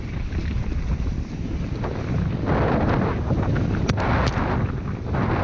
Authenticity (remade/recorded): recorded